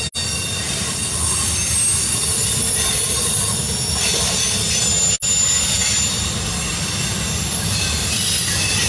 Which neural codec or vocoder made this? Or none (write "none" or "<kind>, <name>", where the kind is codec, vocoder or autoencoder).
none